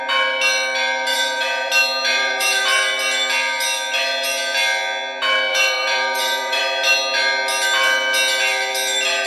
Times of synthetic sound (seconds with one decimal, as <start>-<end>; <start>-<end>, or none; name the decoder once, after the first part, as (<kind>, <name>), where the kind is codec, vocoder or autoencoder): 1.1-1.7 (vocoder, Vocos); 2.1-2.6; 5.5-6.6